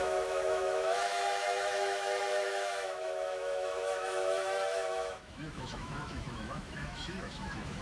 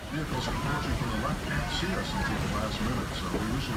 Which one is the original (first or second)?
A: second